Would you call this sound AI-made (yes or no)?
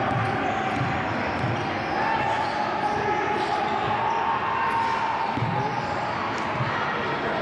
no